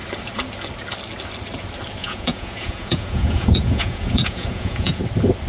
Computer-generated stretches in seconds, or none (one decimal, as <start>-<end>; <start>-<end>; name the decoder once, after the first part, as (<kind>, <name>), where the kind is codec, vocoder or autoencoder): 2.0-5.0 (vocoder, Vocos)